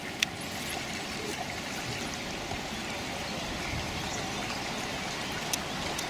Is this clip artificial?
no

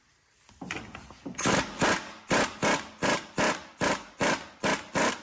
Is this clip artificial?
no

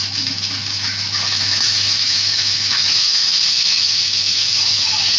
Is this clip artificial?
yes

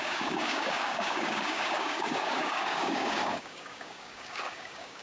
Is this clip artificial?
yes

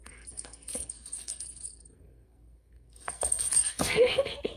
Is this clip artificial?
yes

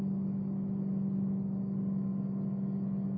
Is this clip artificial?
no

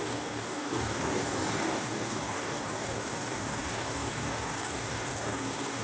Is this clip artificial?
yes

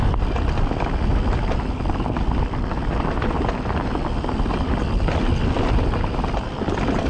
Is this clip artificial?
no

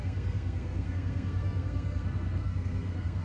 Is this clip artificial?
yes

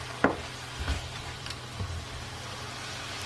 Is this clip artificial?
yes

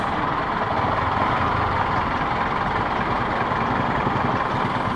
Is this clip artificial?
no